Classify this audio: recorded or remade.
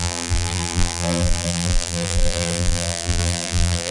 remade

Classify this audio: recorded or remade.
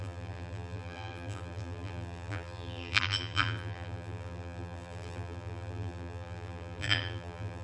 remade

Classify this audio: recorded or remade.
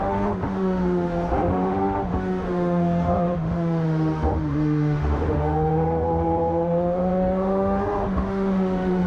remade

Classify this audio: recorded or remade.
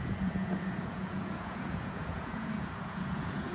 remade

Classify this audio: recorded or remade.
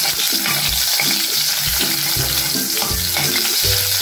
recorded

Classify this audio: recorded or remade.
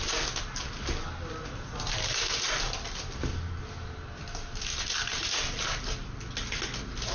recorded